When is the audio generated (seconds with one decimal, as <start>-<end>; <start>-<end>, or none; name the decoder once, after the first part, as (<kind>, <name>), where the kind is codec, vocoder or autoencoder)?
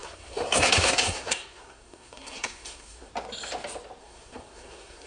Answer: 0.0-3.1 (codec, SNAC); 4.0-5.1